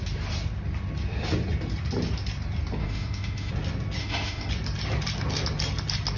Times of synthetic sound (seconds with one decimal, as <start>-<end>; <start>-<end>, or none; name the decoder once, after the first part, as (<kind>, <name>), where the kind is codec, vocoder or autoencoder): 2.8-3.5 (autoencoder, DAC-VAE); 4.0-4.5